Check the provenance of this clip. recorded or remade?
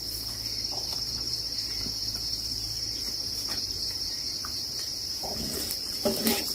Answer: remade